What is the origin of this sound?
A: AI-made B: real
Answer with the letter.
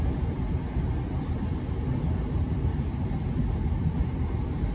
B